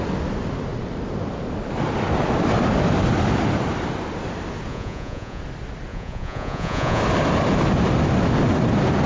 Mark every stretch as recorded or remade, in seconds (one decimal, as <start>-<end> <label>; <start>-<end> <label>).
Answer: 0.0-4.7 recorded; 4.7-5.4 remade; 5.4-5.9 recorded; 5.9-7.0 remade; 7.0-9.1 recorded